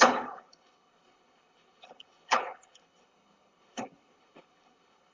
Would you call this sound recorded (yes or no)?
no